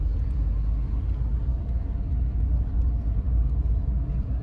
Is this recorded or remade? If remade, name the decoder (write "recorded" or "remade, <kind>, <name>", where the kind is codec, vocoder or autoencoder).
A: recorded